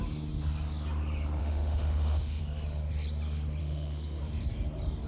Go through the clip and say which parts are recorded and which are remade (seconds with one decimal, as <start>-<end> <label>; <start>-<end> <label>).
0.0-1.4 recorded; 1.4-2.4 remade; 2.4-3.6 recorded; 3.6-4.2 remade; 4.2-5.1 recorded